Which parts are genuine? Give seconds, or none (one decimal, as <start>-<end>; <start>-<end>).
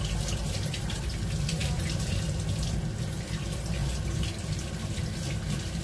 0.0-0.4; 1.1-1.6; 2.3-3.8; 5.0-5.8